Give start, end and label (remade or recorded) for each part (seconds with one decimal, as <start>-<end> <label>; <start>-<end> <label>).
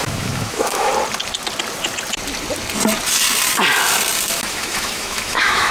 0.0-0.9 remade; 0.9-4.3 recorded; 4.3-5.7 remade